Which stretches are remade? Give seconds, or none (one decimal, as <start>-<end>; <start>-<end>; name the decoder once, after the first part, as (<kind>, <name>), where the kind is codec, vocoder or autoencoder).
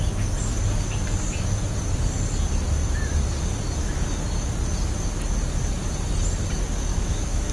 6.9-7.5 (autoencoder, DAC-VAE)